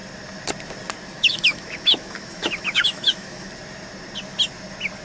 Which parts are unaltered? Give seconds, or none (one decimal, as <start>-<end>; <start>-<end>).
0.0-1.2; 3.5-5.0